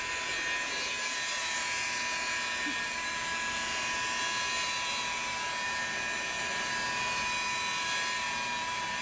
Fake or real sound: real